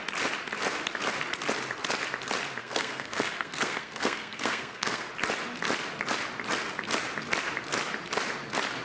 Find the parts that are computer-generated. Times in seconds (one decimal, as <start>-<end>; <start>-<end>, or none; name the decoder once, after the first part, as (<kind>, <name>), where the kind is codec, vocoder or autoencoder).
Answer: 2.6-5.1 (codec, SNAC)